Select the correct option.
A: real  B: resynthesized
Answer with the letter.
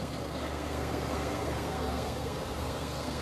B